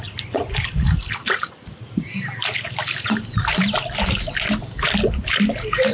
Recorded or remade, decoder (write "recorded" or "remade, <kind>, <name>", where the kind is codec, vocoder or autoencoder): recorded